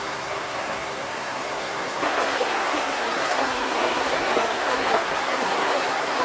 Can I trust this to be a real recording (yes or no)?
no